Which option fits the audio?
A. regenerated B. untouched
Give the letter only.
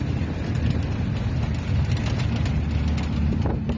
B